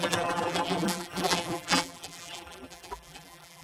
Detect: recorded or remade remade